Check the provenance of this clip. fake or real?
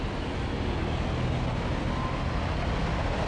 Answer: real